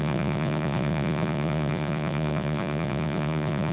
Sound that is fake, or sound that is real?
fake